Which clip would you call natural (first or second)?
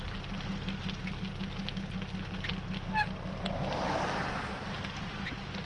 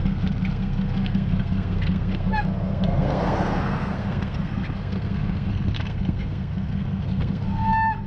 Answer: first